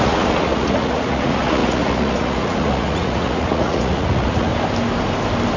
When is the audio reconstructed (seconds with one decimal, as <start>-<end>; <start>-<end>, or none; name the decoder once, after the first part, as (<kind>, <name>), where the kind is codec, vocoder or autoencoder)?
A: 0.0-4.5 (vocoder, Vocos)